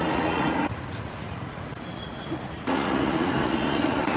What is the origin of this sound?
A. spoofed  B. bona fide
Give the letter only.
A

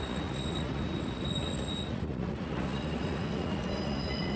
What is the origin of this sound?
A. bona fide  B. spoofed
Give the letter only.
B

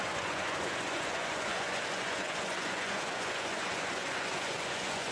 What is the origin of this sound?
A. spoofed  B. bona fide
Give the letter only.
A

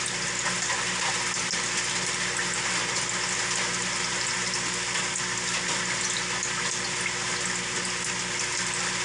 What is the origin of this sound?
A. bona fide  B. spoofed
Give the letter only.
A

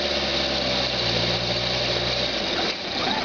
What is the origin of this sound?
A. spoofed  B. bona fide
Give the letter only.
B